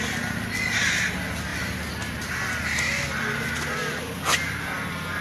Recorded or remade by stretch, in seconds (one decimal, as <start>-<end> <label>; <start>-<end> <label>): 0.0-5.2 recorded